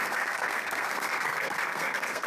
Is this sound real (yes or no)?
no